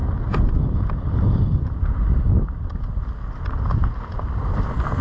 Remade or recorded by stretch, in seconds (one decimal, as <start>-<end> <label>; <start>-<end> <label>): 0.0-3.0 remade; 3.0-5.0 recorded